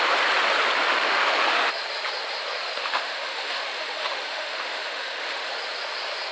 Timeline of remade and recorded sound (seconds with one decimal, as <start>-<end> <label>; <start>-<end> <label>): 0.0-1.0 recorded; 1.0-1.7 remade; 1.7-2.8 recorded; 2.8-5.5 remade; 5.5-6.3 recorded